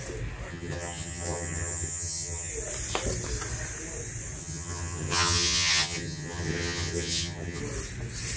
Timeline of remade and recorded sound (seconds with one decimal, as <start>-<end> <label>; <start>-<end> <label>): 0.0-0.5 recorded; 0.5-2.5 remade; 2.5-4.4 recorded; 4.4-7.6 remade; 7.6-8.4 recorded